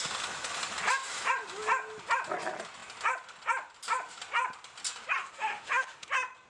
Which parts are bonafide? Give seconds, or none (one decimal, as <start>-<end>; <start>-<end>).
0.0-5.2; 6.1-6.5